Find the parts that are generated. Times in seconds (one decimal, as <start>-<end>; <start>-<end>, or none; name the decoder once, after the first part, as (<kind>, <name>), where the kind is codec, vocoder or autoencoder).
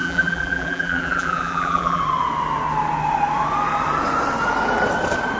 0.0-2.0 (vocoder, BigVGAN v2)